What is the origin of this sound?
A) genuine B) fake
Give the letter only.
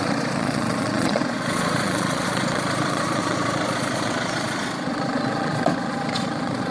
B